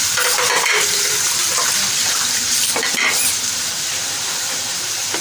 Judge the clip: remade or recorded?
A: remade